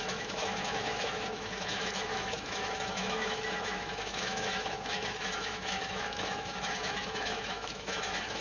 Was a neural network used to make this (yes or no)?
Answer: yes